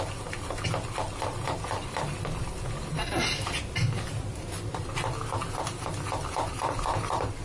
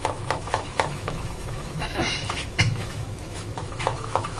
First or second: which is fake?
second